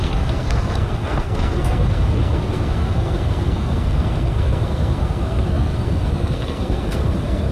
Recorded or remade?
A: remade